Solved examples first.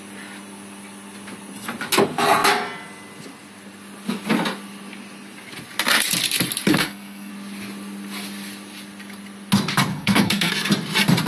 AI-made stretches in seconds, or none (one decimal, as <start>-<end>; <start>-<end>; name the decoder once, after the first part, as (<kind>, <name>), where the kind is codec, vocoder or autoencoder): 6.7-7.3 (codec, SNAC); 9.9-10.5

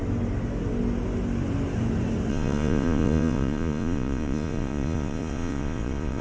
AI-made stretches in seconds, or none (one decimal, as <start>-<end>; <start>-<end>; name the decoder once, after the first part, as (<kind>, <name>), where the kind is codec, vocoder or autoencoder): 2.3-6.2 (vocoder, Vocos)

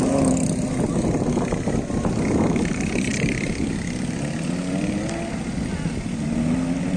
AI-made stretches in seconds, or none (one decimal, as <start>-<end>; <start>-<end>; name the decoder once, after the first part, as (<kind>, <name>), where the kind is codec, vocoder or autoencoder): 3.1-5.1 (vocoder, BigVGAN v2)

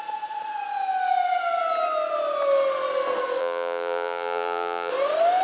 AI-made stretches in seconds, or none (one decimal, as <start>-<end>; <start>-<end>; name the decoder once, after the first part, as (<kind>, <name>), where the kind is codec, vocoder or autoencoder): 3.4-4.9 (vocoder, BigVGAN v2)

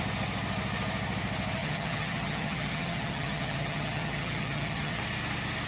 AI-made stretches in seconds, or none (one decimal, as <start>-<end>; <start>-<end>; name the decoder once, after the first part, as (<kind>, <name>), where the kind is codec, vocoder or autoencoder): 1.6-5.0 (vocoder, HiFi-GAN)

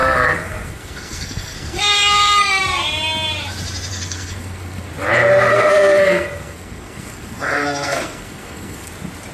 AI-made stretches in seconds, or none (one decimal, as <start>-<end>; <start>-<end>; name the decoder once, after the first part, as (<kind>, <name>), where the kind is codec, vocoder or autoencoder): 0.0-2.6 (codec, SNAC); 3.9-4.9; 5.5-8.9

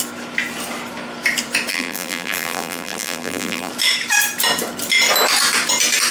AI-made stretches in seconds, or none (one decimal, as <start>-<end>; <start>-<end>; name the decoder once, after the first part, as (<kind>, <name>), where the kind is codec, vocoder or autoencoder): 1.7-3.7 (vocoder, BigVGAN v2)

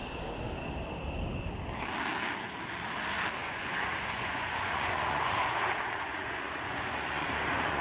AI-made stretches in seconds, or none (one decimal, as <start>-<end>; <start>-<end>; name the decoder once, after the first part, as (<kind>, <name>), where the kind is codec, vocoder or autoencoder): 3.4-7.8 (vocoder, Vocos)